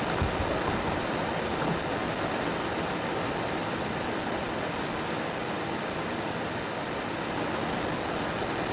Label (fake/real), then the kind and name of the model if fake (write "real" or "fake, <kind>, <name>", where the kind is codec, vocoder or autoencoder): real